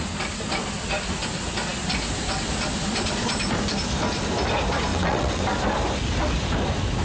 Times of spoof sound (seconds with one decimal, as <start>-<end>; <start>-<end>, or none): 4.9-5.4